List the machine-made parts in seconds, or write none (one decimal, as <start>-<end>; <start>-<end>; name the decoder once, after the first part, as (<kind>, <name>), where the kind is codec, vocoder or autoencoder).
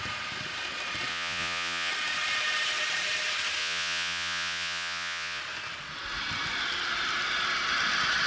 1.1-1.9 (vocoder, Vocos); 3.6-5.4